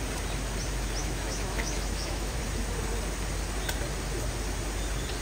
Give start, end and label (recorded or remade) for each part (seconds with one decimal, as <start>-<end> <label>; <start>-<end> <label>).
0.0-1.0 recorded; 1.0-2.4 remade; 2.4-5.2 recorded